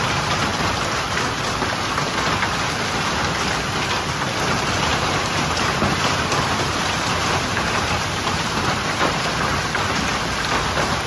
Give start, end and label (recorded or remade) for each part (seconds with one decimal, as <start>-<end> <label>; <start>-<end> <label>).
0.0-4.9 recorded; 4.9-9.5 remade; 9.5-11.1 recorded